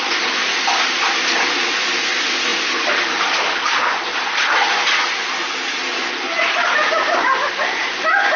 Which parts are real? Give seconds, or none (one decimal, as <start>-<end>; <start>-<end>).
0.0-8.4